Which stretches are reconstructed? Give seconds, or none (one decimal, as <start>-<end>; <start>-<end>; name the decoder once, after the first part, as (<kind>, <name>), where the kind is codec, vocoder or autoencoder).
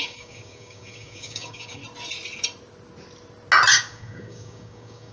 0.0-1.8 (codec, DAC); 3.7-5.1